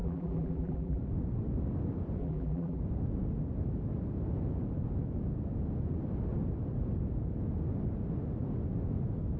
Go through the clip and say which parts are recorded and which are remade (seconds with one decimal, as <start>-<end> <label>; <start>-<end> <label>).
0.0-1.0 remade; 1.0-2.2 recorded; 2.2-2.8 remade; 2.8-9.4 recorded